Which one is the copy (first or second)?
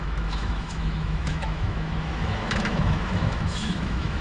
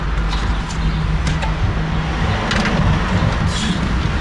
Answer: first